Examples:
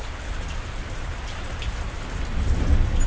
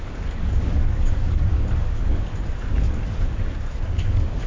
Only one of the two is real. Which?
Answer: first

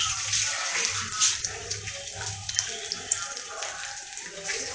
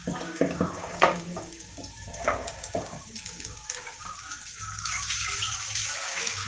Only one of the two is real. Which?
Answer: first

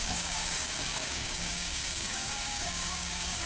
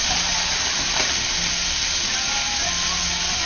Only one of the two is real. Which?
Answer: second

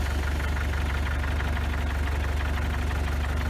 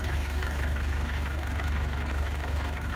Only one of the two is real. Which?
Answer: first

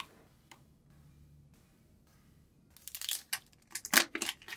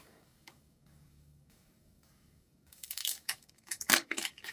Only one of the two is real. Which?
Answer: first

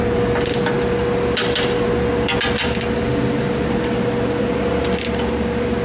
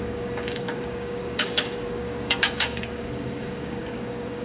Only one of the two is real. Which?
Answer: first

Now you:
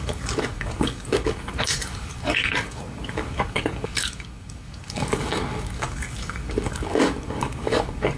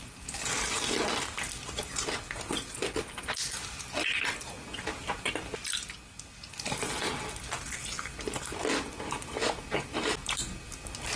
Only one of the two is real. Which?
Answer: second